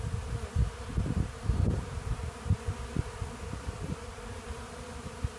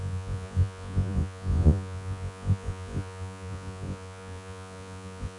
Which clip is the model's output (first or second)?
second